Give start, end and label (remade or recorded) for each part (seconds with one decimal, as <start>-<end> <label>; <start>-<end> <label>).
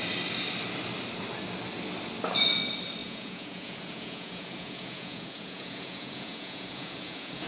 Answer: 0.0-3.0 recorded; 3.0-7.5 remade